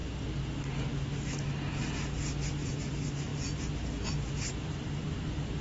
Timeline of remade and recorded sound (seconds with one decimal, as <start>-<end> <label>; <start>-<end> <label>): 0.0-2.5 recorded; 2.5-5.6 remade